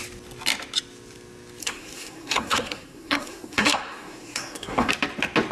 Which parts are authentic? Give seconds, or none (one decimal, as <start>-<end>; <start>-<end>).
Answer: 0.0-1.6; 4.9-5.5